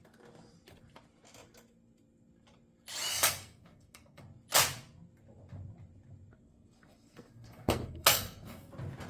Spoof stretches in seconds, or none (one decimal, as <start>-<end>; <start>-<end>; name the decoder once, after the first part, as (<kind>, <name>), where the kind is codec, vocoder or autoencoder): 3.1-4.2 (codec, SNAC); 6.3-8.7